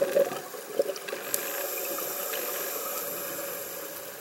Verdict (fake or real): real